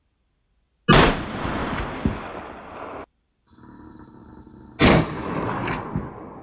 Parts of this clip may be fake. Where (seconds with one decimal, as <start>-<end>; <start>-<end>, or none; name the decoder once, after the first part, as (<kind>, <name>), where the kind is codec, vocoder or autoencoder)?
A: 1.6-2.8 (vocoder, BigVGAN v2)